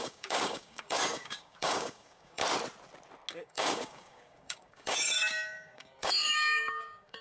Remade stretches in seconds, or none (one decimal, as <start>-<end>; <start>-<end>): 0.0-2.4; 3.3-7.2